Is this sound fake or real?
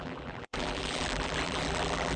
fake